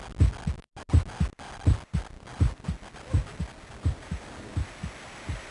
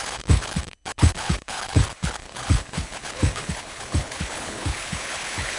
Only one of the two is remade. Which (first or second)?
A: second